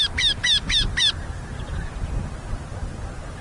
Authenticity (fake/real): real